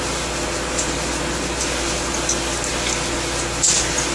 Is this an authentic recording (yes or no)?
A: yes